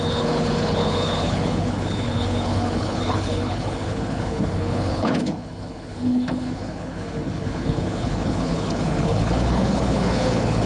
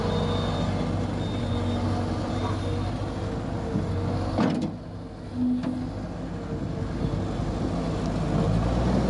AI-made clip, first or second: first